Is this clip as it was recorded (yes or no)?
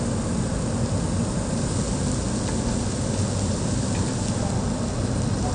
yes